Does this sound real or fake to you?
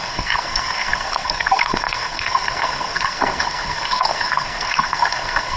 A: fake